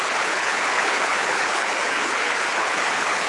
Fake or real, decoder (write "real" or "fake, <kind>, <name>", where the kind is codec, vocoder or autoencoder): fake, codec, HILCodec